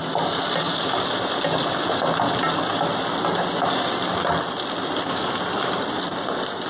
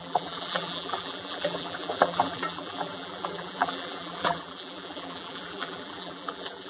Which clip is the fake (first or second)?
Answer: second